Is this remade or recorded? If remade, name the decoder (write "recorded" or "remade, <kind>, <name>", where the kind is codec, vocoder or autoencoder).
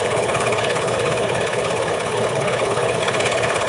remade, codec, HILCodec